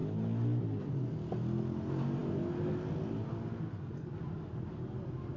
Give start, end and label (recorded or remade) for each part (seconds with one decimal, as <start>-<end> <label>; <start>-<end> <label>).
0.0-5.4 recorded